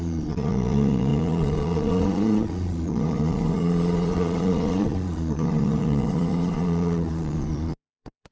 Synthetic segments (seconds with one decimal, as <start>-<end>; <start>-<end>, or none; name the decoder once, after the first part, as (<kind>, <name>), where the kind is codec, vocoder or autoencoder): 0.0-8.3 (vocoder, Vocos)